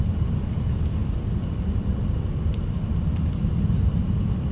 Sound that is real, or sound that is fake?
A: real